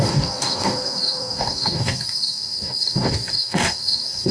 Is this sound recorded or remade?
remade